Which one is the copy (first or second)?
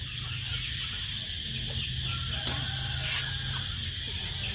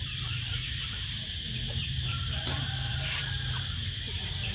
second